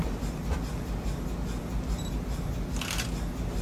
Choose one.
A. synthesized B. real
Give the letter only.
B